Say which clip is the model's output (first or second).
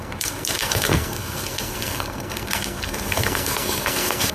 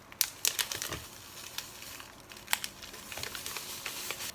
first